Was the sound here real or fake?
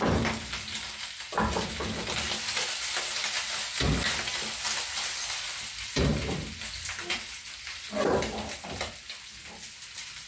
real